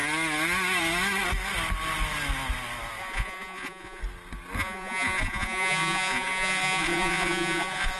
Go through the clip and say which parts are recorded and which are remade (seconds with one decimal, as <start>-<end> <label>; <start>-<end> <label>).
0.0-3.0 recorded; 3.0-4.0 remade; 4.0-4.6 recorded; 4.6-8.0 remade